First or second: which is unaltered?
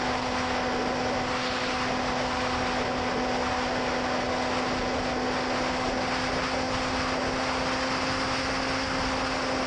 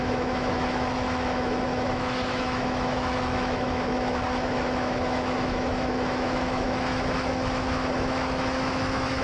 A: first